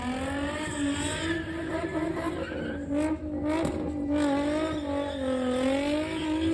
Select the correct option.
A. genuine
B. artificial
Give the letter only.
A